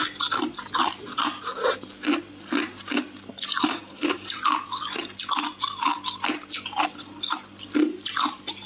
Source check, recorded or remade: recorded